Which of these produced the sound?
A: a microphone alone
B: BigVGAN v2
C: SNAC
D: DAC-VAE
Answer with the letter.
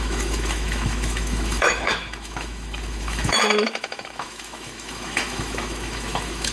D